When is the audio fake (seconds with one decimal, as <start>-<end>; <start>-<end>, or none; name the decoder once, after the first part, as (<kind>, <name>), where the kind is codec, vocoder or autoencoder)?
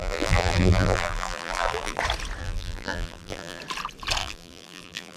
0.0-2.0 (vocoder, BigVGAN v2); 2.4-3.6; 4.2-5.2